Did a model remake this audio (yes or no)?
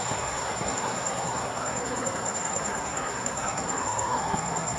yes